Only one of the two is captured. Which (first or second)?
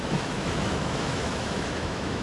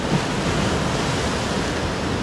second